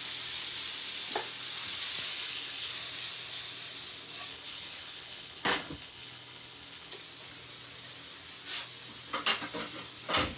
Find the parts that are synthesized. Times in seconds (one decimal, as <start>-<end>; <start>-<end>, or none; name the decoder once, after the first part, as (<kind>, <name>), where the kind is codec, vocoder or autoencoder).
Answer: 2.1-2.7 (codec, HILCodec); 4.3-6.9